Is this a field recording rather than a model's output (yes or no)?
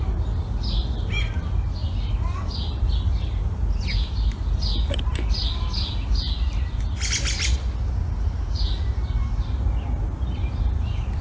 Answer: yes